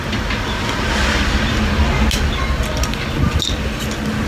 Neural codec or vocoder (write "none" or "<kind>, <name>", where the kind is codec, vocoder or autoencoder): none